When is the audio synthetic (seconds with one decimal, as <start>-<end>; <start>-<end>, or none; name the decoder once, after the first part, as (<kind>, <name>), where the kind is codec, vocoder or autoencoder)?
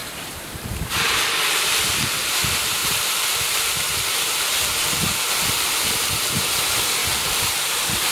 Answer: 0.0-1.2 (vocoder, BigVGAN v2); 2.8-4.4; 7.0-8.1